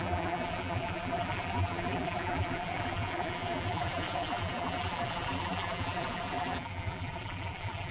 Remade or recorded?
remade